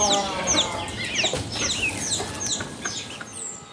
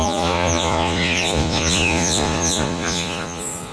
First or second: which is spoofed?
second